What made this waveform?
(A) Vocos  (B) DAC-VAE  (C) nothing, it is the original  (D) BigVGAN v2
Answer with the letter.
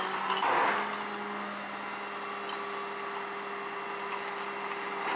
C